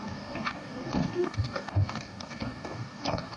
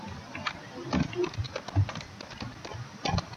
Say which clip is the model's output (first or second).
first